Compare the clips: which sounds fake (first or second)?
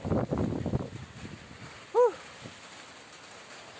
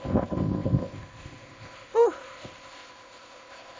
second